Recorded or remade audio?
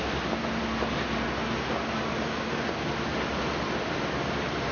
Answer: recorded